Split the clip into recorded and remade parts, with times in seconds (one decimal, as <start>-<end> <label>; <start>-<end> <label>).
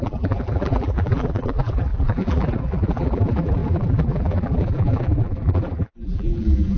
0.0-6.8 remade